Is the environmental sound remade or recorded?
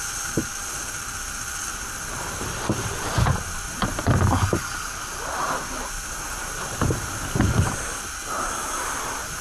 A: recorded